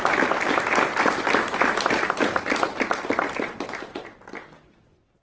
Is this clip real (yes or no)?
yes